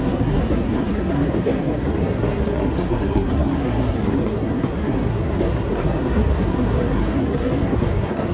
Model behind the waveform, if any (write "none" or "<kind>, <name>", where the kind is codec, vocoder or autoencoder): codec, SNAC